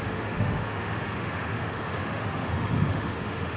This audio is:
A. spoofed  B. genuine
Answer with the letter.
A